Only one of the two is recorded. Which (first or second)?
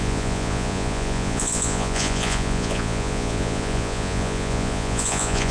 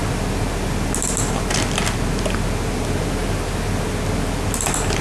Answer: second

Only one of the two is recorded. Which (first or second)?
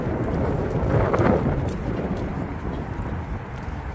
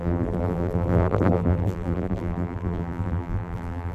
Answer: first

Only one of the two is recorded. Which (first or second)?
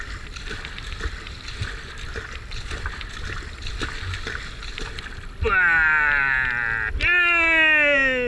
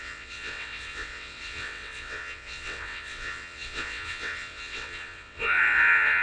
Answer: first